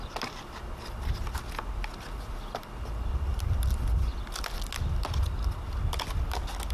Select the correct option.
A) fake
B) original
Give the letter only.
B